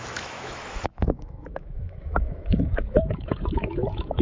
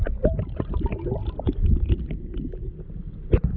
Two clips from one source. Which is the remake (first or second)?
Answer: first